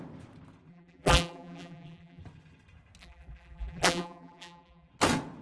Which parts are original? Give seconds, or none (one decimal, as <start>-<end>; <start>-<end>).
0.0-0.7; 2.2-3.0; 4.9-5.4